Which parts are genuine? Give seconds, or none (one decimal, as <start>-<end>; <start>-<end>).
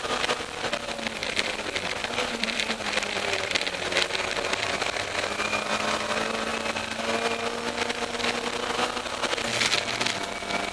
0.0-1.2; 5.7-10.7